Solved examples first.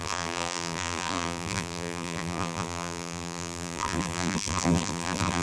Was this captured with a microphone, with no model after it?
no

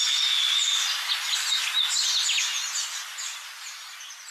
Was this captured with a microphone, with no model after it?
yes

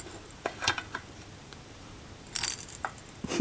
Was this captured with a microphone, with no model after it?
no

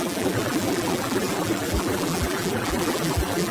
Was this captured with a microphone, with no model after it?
no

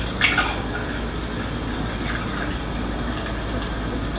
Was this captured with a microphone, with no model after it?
yes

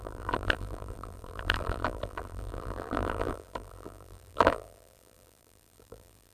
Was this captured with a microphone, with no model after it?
no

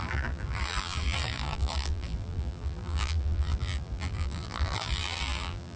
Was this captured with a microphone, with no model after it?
no